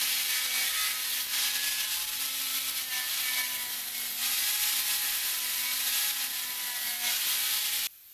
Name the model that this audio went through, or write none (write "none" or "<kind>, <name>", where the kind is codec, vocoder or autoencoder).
none